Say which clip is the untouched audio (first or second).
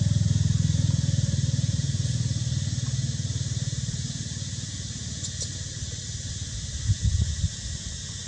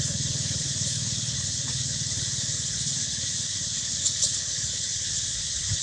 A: first